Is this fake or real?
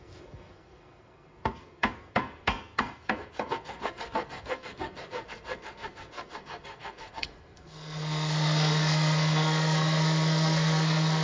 fake